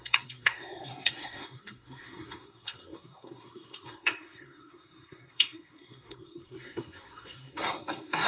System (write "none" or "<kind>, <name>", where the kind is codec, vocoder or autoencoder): codec, SNAC